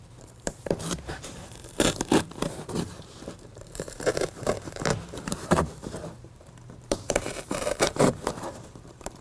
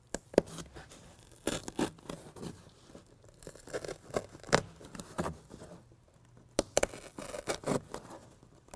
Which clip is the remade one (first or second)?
first